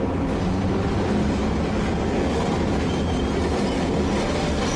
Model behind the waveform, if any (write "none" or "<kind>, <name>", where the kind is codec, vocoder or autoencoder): none